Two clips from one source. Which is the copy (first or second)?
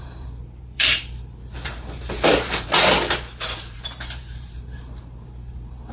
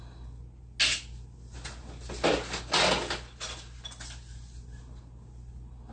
first